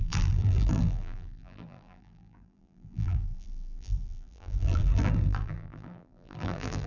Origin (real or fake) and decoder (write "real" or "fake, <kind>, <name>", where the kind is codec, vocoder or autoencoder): fake, vocoder, BigVGAN v2